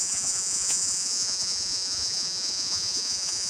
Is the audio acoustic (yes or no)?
no